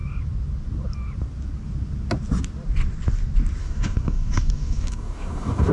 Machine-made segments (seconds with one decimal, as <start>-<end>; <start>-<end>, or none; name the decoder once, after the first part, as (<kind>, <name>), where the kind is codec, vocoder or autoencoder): 3.6-5.7 (codec, DAC)